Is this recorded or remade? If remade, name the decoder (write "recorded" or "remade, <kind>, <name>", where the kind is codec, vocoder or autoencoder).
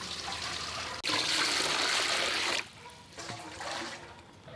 recorded